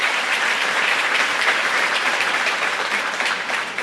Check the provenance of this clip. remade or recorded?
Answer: remade